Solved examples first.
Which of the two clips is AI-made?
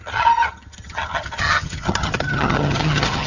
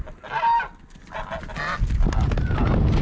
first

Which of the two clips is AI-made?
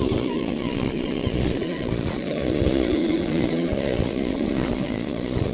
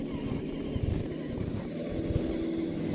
first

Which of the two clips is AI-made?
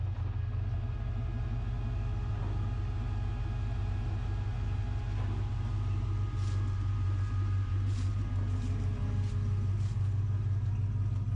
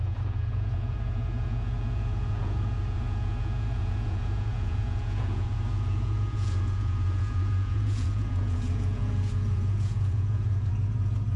second